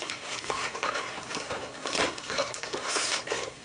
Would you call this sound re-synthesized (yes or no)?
yes